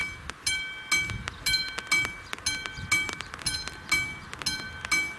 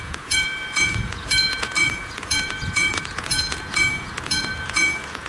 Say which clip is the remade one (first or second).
second